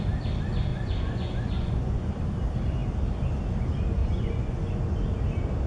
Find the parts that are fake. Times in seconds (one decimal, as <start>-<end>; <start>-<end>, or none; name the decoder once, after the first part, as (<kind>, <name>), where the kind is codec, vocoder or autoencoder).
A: 0.7-2.1 (vocoder, Vocos); 4.0-4.8